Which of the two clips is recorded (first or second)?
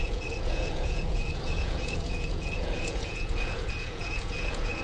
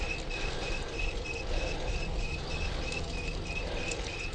second